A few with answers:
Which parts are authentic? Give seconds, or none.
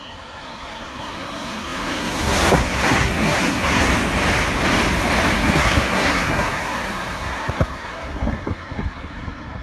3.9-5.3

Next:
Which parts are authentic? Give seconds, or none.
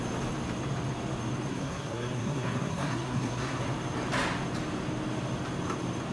0.0-1.5; 3.6-6.1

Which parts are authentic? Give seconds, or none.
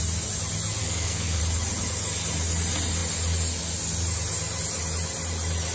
0.0-0.8; 1.4-5.7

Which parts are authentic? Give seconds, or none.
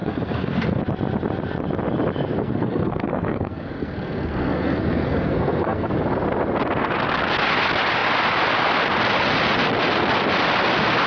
0.8-2.4; 5.9-11.1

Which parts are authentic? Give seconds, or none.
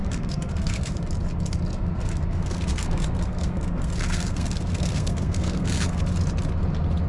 0.9-1.7; 6.0-7.1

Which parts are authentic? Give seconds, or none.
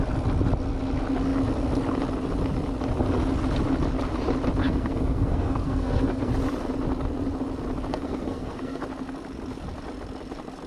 0.0-4.6; 6.3-7.9; 8.8-10.7